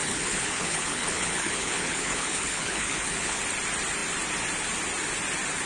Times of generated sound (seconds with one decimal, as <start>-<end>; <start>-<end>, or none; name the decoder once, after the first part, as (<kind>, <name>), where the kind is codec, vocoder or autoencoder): 0.0-3.4 (codec, HILCodec)